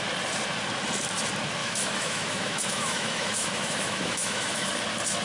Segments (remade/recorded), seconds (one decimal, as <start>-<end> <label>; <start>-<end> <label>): 0.0-1.6 recorded; 1.6-4.7 remade; 4.7-5.2 recorded